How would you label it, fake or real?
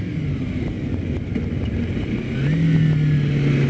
real